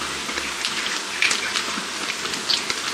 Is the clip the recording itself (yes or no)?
yes